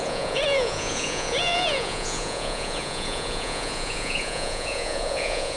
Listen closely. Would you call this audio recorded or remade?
remade